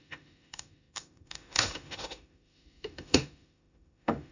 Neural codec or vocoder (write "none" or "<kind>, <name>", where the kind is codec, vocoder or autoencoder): autoencoder, DAC-VAE